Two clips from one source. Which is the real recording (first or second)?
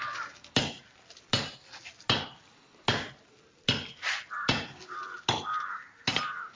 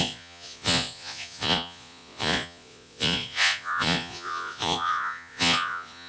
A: first